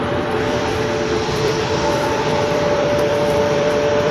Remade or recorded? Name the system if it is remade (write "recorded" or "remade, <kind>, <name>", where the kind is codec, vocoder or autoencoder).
remade, vocoder, BigVGAN v2